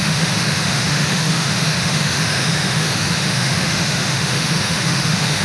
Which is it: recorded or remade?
remade